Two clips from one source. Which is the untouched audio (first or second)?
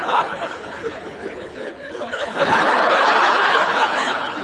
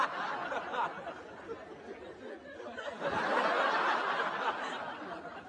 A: second